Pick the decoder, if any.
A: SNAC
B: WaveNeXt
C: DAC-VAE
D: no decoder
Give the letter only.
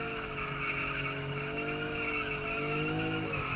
C